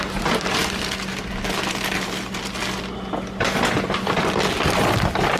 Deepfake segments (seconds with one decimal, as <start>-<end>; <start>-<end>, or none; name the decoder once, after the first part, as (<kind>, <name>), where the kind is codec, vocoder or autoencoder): none